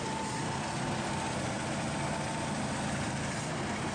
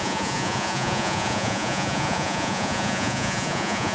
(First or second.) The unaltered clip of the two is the first